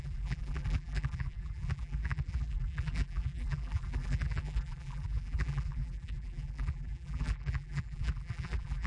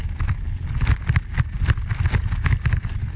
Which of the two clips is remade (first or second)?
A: first